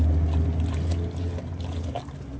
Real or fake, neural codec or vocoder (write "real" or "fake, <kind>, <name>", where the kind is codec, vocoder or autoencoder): real